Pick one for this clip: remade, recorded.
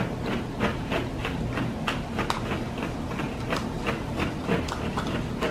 recorded